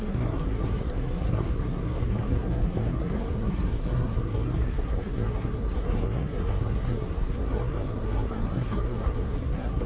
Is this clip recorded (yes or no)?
no